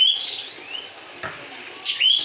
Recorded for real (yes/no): yes